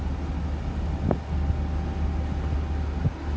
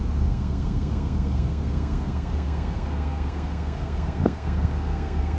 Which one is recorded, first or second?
first